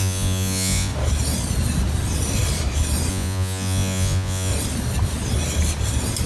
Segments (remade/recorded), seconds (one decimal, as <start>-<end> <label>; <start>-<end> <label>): 0.0-0.9 remade; 0.9-3.1 recorded; 3.1-4.5 remade; 4.5-6.3 recorded